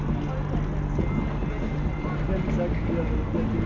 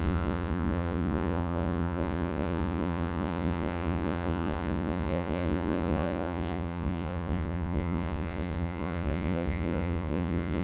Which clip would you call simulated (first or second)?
second